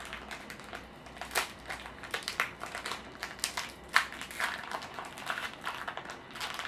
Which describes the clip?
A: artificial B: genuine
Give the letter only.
B